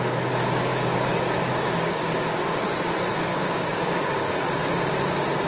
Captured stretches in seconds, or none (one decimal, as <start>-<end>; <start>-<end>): 0.0-0.7; 2.5-3.3; 4.3-5.5